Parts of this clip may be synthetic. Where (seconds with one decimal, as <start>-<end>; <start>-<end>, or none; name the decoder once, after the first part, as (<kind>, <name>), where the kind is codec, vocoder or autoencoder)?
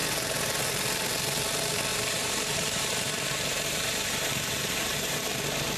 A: 1.9-5.2 (vocoder, BigVGAN v2)